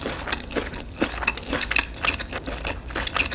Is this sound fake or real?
real